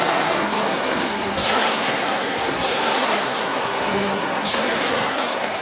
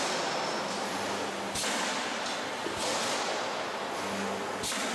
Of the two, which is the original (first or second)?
second